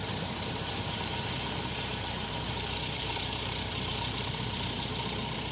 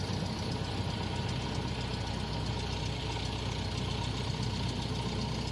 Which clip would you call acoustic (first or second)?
second